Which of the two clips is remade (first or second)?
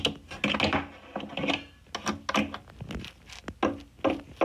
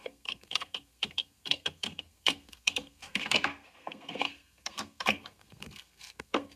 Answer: second